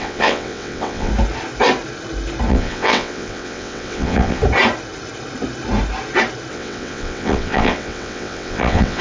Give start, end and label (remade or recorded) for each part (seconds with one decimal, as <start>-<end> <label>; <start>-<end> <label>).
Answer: 0.0-1.1 remade; 1.1-2.5 recorded; 2.5-4.4 remade; 4.4-6.5 recorded; 6.5-9.0 remade